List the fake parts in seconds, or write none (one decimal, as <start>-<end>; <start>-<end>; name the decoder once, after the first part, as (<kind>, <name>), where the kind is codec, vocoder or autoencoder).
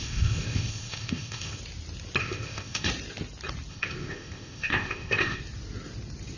0.0-1.6 (codec, ZipCodec); 2.2-2.9; 3.7-5.4